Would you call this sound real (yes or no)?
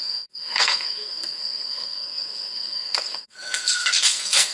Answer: no